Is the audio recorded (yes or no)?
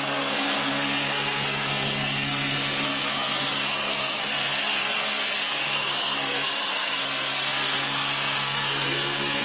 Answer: no